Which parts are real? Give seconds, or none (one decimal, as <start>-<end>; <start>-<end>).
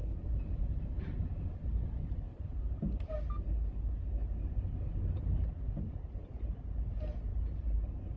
1.6-7.3